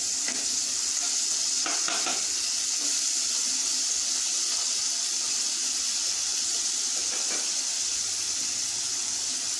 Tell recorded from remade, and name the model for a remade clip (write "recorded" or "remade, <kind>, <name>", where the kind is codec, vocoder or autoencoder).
recorded